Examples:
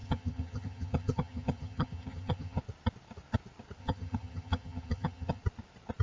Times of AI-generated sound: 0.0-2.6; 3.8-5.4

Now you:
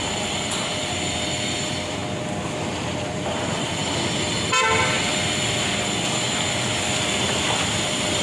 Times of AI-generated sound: 0.0-2.0; 2.6-3.8; 7.2-8.2

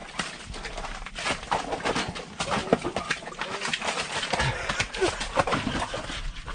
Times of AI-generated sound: none

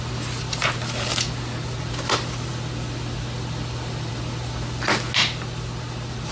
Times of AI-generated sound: none

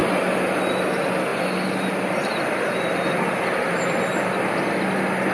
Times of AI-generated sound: none